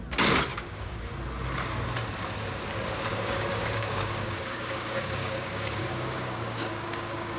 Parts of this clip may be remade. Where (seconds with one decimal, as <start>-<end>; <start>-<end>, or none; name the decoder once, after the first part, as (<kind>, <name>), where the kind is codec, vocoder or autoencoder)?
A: 0.5-1.0 (codec, DAC); 3.1-7.4